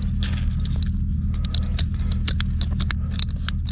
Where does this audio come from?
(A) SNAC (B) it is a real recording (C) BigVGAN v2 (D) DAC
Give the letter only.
B